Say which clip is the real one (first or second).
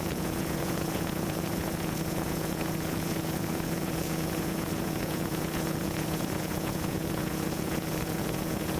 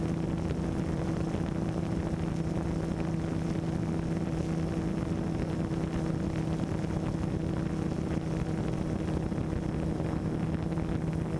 second